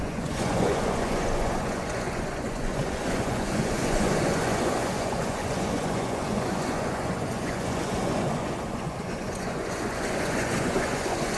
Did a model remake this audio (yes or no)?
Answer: yes